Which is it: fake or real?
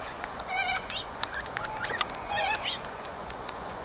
fake